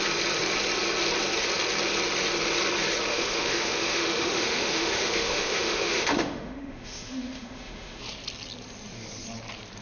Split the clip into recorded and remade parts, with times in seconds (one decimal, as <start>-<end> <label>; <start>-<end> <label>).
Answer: 0.0-3.1 recorded; 3.1-8.0 remade; 8.0-9.8 recorded